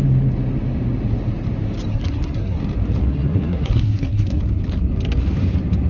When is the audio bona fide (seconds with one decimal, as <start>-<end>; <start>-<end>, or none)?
0.0-1.9; 2.6-3.0; 4.4-5.9